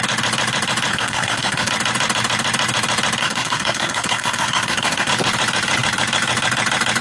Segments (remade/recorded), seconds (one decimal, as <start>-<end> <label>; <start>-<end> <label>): 0.0-0.9 recorded; 0.9-1.7 remade; 1.7-3.2 recorded; 3.2-5.1 remade; 5.1-7.0 recorded